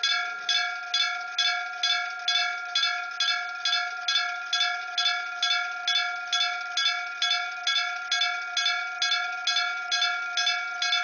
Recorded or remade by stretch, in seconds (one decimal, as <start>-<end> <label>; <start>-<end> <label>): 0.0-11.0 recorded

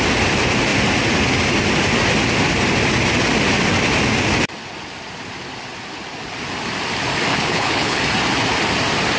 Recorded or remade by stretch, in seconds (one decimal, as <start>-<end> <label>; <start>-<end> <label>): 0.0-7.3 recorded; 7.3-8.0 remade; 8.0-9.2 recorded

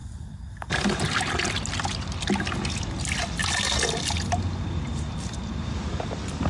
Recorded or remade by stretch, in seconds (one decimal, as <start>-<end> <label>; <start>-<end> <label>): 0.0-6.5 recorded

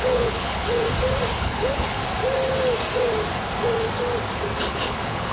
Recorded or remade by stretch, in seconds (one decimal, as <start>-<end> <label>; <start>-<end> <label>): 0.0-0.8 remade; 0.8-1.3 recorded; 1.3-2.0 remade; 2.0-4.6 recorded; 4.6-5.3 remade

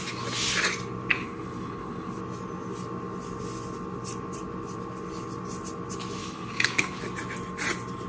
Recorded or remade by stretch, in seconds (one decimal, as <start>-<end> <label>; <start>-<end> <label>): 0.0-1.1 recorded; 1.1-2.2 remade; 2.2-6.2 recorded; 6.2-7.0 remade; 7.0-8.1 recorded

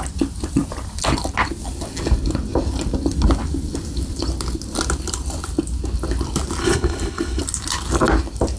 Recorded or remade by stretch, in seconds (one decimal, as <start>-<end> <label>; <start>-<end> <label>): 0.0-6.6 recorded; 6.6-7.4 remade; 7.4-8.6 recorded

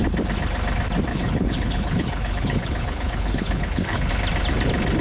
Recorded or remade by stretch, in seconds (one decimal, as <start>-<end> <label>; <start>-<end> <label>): 0.0-1.1 recorded; 1.1-4.1 remade; 4.1-5.0 recorded